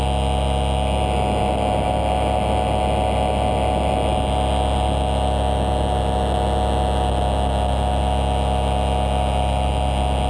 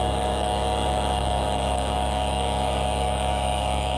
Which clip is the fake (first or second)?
second